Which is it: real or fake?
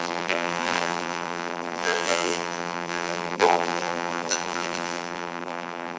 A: fake